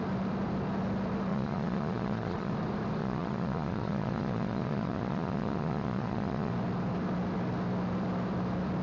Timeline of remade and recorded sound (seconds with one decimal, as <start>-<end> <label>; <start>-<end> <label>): 0.0-1.3 recorded; 1.3-2.5 remade; 2.5-3.0 recorded; 3.0-6.5 remade; 6.5-8.8 recorded